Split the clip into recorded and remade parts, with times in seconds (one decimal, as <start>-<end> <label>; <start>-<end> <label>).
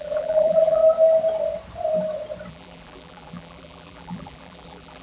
0.0-0.8 remade; 0.8-2.5 recorded; 2.5-5.0 remade